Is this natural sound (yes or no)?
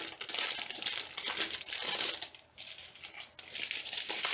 yes